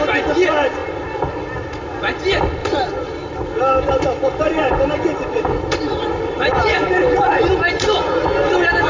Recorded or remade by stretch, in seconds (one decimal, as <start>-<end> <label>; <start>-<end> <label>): 0.0-2.6 recorded; 2.6-7.3 remade; 7.3-8.9 recorded